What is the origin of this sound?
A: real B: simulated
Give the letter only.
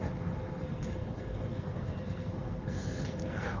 B